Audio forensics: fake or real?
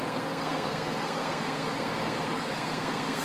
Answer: fake